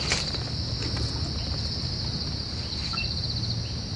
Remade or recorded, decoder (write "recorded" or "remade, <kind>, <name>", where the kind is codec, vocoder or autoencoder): recorded